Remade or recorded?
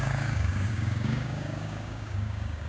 remade